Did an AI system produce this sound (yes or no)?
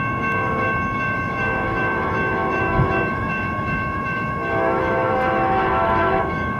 yes